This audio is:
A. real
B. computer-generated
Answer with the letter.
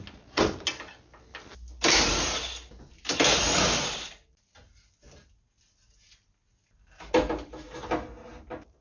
A